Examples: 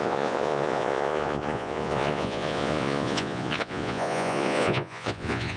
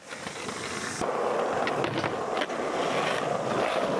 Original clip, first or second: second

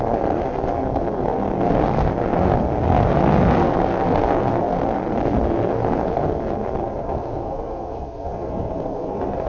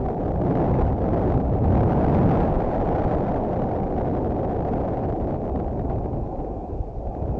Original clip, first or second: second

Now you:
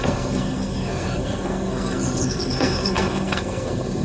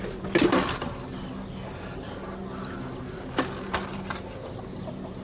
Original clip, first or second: second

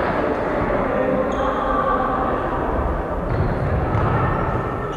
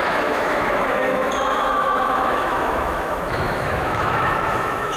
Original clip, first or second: first